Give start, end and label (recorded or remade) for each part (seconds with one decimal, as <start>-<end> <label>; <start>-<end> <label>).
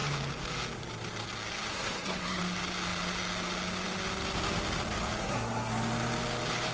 0.0-1.7 recorded; 1.7-2.4 remade; 2.4-5.2 recorded; 5.2-5.7 remade; 5.7-6.7 recorded